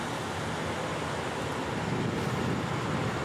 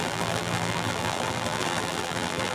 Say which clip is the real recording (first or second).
first